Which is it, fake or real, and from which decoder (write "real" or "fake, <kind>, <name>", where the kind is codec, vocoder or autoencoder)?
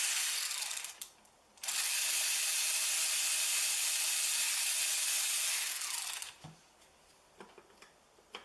real